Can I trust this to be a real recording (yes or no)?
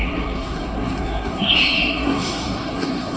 no